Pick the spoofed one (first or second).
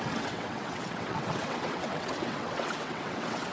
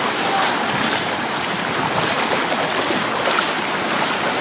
first